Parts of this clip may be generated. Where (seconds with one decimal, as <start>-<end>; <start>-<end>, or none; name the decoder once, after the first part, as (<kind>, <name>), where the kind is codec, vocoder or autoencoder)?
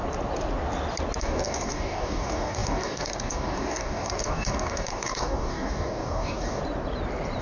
1.2-6.6 (codec, DAC)